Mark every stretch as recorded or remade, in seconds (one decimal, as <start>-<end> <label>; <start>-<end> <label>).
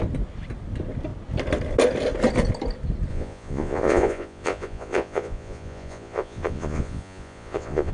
0.0-3.1 recorded; 3.1-7.9 remade